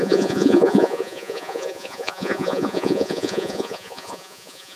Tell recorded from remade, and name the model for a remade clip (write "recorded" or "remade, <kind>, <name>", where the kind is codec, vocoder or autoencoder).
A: remade, vocoder, Vocos